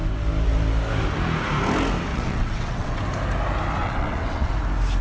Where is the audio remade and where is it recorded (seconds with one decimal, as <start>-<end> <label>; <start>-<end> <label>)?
0.0-2.1 recorded; 2.1-3.0 remade; 3.0-3.8 recorded; 3.8-4.5 remade; 4.5-5.0 recorded